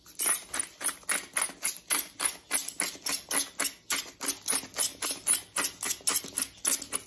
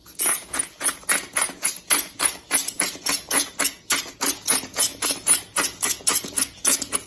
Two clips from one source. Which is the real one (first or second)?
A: first